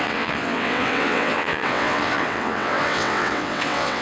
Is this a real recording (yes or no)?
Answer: no